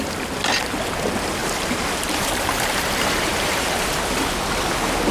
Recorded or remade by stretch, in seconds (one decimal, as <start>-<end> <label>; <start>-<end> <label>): 0.0-1.4 recorded; 1.4-4.5 remade; 4.5-5.1 recorded